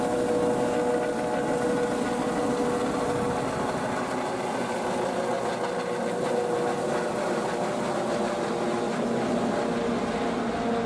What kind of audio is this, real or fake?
real